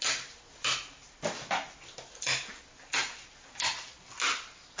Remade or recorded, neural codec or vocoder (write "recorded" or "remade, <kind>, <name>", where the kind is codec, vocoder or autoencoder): recorded